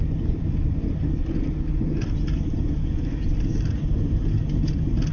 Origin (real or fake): real